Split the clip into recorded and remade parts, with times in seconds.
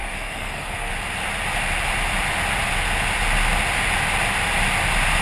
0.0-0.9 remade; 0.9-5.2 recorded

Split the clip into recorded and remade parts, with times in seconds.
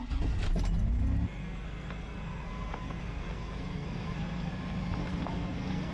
0.0-1.4 recorded; 1.4-4.5 remade; 4.5-5.0 recorded; 5.0-5.9 remade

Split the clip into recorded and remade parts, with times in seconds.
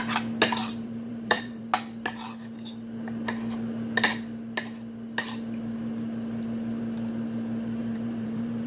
0.0-0.6 recorded; 0.6-1.6 remade; 1.6-7.8 recorded; 7.8-8.7 remade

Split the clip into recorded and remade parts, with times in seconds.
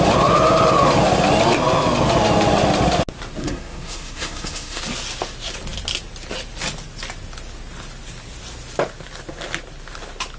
0.0-3.4 recorded; 3.4-4.8 remade; 4.8-10.4 recorded